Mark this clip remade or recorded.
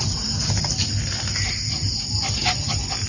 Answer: recorded